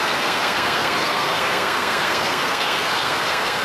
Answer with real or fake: fake